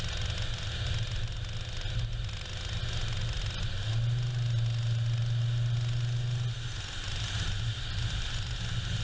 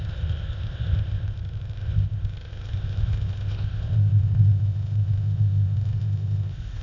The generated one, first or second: second